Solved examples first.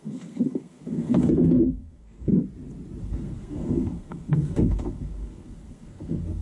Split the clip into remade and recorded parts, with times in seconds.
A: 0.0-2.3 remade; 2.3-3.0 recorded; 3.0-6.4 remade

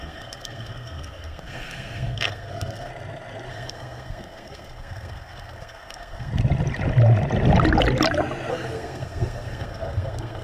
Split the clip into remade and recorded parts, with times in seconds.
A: 0.0-2.9 remade; 2.9-3.5 recorded; 3.5-6.3 remade; 6.3-8.5 recorded; 8.5-10.4 remade

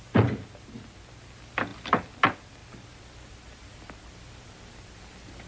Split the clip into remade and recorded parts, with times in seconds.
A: 0.0-5.5 recorded